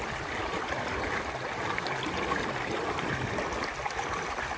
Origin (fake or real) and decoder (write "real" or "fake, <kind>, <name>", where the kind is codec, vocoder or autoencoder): real